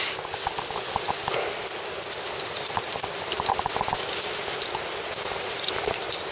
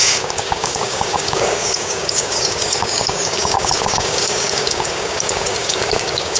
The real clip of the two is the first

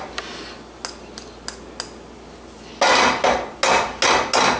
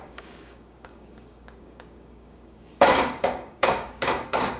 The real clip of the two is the first